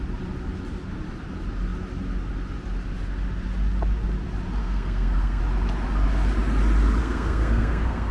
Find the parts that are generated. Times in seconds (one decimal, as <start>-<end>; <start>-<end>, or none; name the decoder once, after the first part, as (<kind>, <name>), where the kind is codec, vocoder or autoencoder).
4.6-5.4 (codec, SNAC); 7.0-8.1